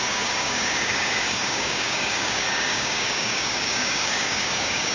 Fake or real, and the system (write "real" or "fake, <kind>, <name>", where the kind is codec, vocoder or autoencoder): fake, codec, DAC